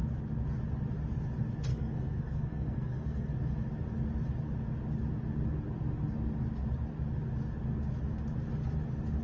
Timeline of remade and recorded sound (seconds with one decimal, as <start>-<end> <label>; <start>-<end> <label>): 0.0-1.7 recorded; 1.7-3.3 remade; 3.3-9.2 recorded